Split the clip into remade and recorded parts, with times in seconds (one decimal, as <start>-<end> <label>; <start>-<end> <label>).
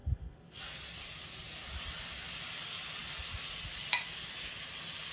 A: 0.0-0.6 remade; 0.6-5.1 recorded